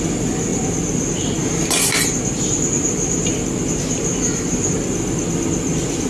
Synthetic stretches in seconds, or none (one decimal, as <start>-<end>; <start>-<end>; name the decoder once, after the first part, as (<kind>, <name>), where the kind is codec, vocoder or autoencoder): none